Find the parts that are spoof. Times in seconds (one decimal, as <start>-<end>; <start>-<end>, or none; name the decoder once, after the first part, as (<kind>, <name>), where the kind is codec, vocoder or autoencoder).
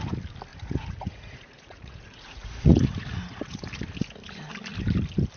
0.5-3.7 (vocoder, Vocos)